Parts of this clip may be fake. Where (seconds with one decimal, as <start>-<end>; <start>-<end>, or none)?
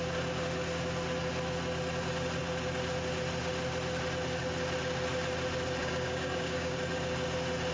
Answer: 5.8-6.8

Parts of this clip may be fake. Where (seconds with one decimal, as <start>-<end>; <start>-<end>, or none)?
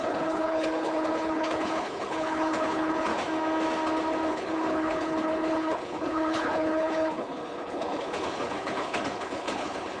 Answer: 0.0-3.1; 4.3-10.0